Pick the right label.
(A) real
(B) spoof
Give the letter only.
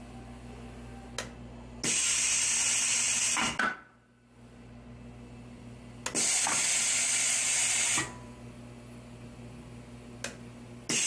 A